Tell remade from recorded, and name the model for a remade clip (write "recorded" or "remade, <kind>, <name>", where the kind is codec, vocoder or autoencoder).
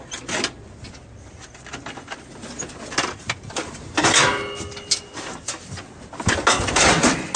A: recorded